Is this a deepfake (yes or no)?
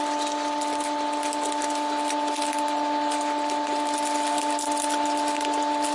no